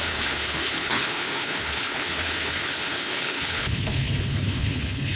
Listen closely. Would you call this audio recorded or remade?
remade